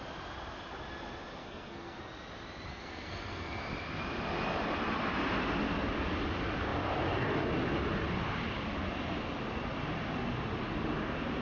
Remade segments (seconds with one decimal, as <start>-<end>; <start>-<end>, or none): 1.4-2.0; 2.7-3.6